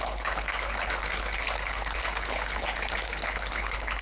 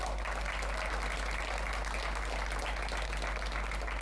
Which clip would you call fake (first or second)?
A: first